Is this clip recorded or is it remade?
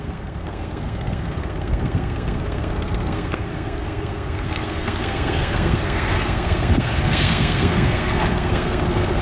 remade